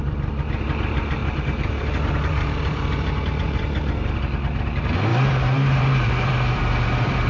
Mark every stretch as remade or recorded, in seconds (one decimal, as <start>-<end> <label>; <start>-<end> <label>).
0.0-1.2 recorded; 1.2-1.8 remade; 1.8-2.3 recorded; 2.3-3.6 remade; 3.6-5.1 recorded; 5.1-7.3 remade